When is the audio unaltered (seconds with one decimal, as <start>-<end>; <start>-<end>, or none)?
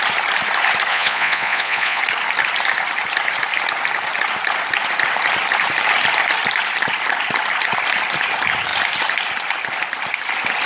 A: 0.0-0.9; 2.0-10.7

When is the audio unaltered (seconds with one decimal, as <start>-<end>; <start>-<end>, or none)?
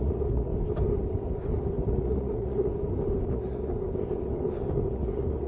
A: 0.5-1.9; 2.7-3.3; 3.7-4.9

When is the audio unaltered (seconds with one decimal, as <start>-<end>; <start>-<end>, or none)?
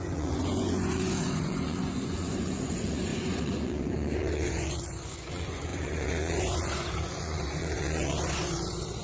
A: none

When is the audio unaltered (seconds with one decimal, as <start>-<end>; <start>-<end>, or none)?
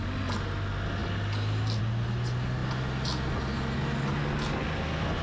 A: 0.0-5.2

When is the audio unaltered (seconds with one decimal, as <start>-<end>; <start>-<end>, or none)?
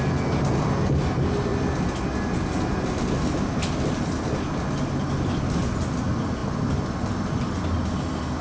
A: 0.0-8.4